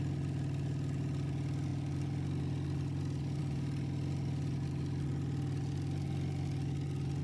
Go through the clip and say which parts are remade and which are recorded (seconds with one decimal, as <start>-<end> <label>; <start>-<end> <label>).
0.0-7.2 recorded